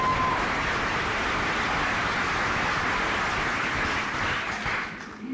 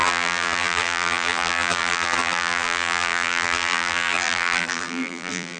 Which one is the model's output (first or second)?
second